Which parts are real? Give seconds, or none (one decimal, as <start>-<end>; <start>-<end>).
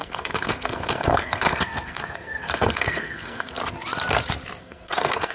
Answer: 3.6-4.6